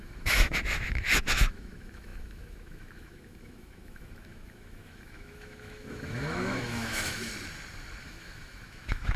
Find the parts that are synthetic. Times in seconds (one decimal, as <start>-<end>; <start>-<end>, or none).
0.0-7.3; 8.0-9.2